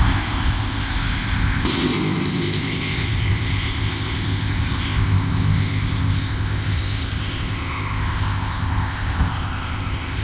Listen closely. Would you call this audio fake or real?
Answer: fake